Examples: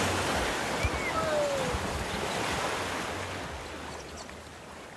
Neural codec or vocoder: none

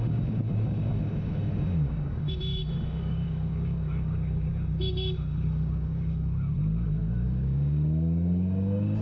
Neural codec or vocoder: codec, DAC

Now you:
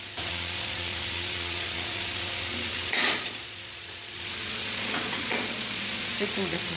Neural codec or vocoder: vocoder, Vocos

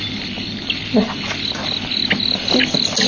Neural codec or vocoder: none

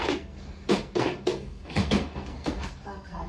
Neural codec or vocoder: codec, SNAC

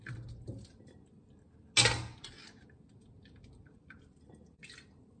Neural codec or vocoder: none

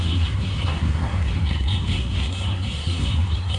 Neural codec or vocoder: codec, SNAC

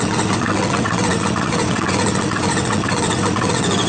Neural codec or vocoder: vocoder, WaveNeXt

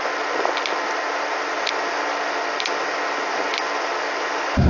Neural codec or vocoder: none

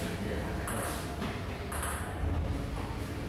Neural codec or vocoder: none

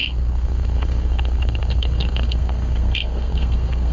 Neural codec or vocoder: codec, SNAC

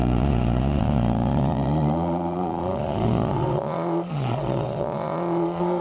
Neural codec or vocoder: vocoder, Vocos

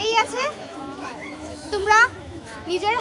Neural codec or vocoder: autoencoder, DAC-VAE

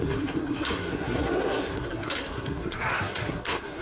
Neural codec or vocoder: codec, SNAC